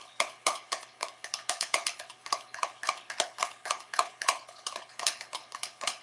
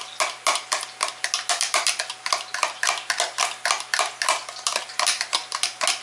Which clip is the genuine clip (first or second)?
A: second